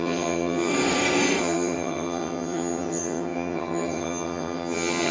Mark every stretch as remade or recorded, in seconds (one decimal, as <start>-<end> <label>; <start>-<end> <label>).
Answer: 0.0-0.7 remade; 0.7-1.4 recorded; 1.4-5.1 remade